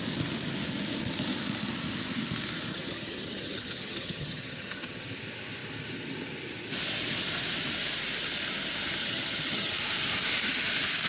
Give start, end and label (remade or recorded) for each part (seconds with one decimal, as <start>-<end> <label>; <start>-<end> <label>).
0.0-2.7 recorded; 2.7-5.0 remade; 5.0-9.0 recorded; 9.0-9.7 remade; 9.7-11.1 recorded